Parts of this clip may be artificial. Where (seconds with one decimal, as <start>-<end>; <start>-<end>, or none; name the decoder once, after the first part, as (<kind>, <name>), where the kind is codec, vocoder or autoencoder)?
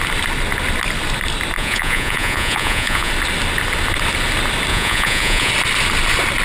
1.6-3.1 (vocoder, Vocos); 4.7-5.5